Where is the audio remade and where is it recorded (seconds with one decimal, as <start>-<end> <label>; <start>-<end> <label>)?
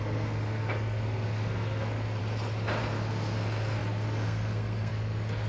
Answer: 0.0-2.2 remade; 2.2-2.8 recorded; 2.8-5.5 remade